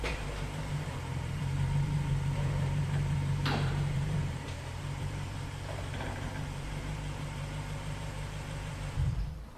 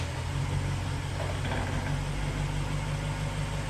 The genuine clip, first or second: second